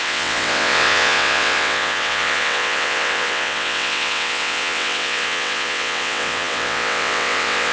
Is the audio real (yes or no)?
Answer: no